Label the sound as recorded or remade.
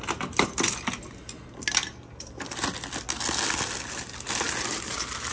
recorded